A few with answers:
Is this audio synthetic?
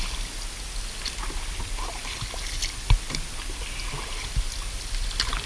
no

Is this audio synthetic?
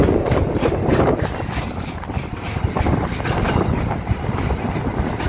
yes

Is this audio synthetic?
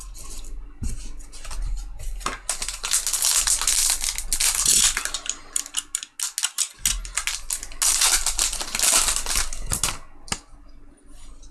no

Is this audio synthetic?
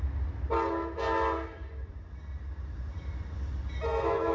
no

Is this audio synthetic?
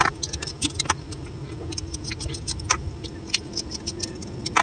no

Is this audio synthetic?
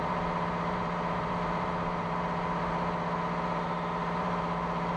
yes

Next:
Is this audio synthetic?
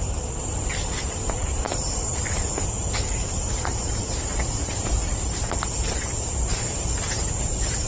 yes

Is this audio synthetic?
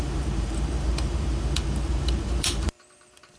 yes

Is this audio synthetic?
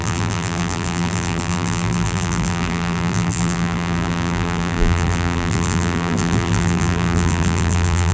yes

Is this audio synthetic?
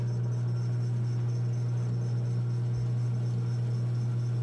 no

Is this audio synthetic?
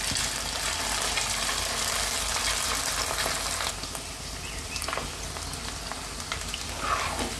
no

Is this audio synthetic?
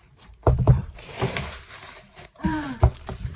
yes